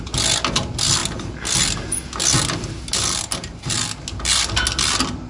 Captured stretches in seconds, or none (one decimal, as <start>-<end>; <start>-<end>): 0.0-5.3